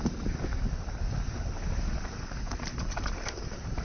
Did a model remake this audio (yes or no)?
no